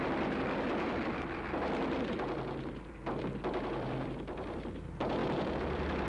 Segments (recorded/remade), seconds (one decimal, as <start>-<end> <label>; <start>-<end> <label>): 0.0-6.1 remade